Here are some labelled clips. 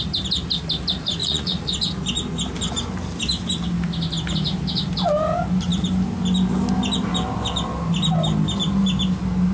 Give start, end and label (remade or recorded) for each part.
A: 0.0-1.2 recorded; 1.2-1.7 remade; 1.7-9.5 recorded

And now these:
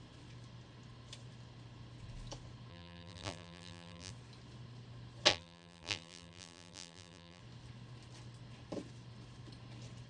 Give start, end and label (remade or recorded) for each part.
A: 0.0-2.7 recorded; 2.7-4.1 remade; 4.1-5.3 recorded; 5.3-7.4 remade; 7.4-10.1 recorded

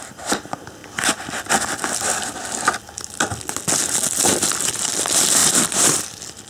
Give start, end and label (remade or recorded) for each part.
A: 0.0-0.8 remade; 0.8-4.2 recorded; 4.2-6.5 remade

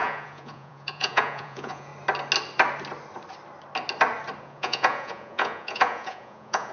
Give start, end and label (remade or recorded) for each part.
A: 0.0-1.9 remade; 1.9-4.4 recorded; 4.4-6.7 remade

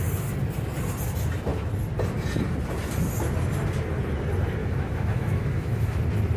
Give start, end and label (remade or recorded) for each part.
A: 0.0-4.6 recorded; 4.6-6.0 remade; 6.0-6.4 recorded